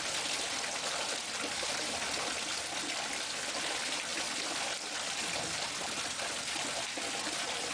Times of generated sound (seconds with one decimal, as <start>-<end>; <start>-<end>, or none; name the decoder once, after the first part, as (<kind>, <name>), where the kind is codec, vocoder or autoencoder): none